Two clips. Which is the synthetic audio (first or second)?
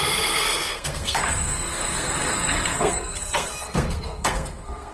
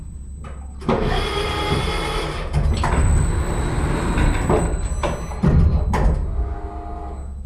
first